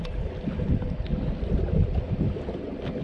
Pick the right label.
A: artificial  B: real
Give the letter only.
B